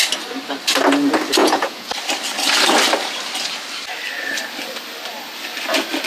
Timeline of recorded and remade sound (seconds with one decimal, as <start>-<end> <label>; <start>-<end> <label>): 0.0-1.4 recorded; 1.4-1.9 remade; 1.9-6.1 recorded